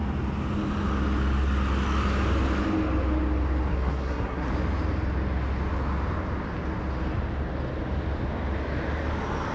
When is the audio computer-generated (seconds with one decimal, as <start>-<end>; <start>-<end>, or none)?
3.7-4.5